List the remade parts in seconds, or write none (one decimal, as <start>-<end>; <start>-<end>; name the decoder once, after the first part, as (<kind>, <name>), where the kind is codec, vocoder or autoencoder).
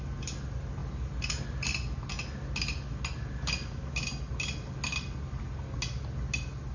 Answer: none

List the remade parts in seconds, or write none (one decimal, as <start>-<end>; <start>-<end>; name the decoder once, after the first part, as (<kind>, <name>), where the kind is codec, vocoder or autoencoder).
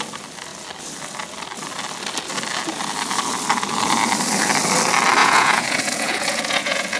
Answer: 5.2-7.0 (vocoder, Vocos)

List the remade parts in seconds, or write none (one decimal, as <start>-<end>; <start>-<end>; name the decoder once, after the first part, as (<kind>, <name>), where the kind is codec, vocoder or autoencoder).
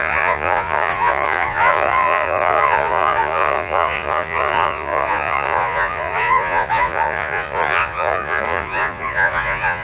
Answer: 0.0-9.8 (vocoder, Vocos)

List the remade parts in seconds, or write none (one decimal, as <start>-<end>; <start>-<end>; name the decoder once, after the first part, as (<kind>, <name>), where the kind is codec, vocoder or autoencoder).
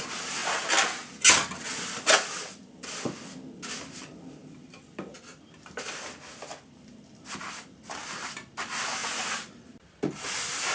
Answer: none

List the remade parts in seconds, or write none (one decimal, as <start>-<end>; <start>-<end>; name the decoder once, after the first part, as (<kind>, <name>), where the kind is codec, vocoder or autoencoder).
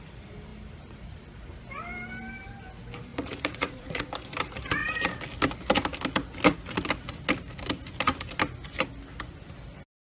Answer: 3.1-4.0 (vocoder, Vocos)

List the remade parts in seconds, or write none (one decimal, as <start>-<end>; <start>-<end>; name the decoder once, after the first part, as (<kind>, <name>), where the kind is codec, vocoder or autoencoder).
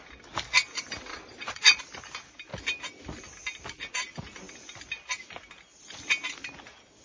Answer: 1.1-1.8 (vocoder, Vocos)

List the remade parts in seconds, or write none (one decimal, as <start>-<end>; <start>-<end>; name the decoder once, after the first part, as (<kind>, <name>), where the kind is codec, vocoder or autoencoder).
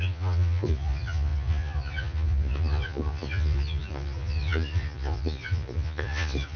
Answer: 0.0-6.6 (vocoder, Vocos)